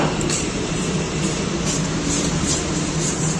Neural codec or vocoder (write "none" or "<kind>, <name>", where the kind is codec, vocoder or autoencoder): vocoder, BigVGAN v2